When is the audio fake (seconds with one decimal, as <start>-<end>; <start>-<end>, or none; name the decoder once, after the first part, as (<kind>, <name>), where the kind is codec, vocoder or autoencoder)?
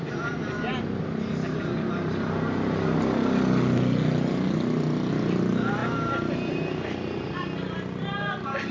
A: none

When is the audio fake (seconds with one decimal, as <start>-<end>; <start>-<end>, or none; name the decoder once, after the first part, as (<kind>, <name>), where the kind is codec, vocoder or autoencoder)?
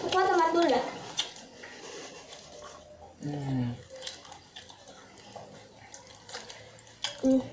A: 0.8-1.8 (vocoder, Vocos)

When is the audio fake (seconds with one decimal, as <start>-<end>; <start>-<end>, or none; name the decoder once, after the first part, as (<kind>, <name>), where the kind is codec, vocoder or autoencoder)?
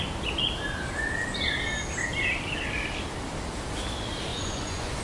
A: 4.3-5.0 (vocoder, Vocos)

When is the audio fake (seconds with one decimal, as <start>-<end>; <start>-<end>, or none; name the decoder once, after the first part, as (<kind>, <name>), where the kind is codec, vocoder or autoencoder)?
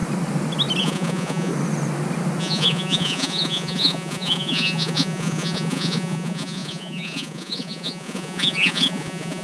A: 0.8-1.5 (vocoder, Vocos); 2.4-9.4